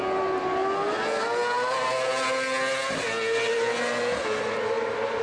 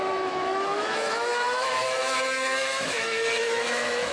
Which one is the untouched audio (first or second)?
first